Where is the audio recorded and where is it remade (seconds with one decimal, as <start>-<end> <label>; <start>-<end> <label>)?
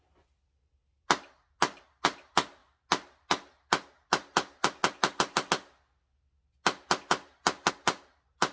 0.0-8.5 recorded